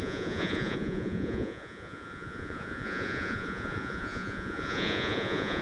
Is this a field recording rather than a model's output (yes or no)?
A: no